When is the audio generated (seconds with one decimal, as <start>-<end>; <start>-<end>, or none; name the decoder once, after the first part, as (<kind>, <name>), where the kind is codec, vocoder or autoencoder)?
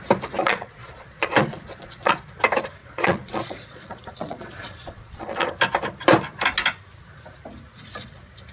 0.4-2.2 (vocoder, Vocos); 2.8-5.5